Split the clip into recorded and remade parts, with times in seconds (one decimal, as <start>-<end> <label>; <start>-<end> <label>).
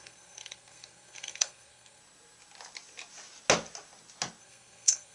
0.0-2.0 remade; 2.0-4.4 recorded; 4.4-5.1 remade